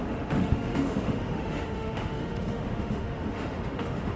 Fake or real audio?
fake